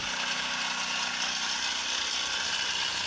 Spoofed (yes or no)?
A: no